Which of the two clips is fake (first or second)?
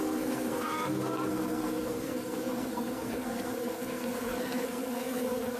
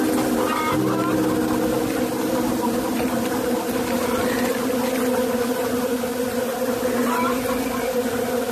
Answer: first